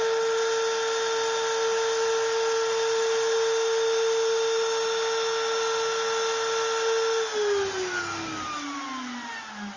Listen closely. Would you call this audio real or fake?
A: real